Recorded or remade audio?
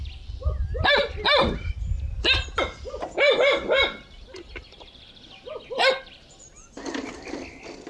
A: recorded